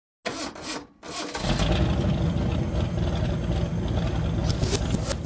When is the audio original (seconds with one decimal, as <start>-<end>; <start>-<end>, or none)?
0.0-5.3